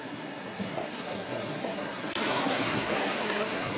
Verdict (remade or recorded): remade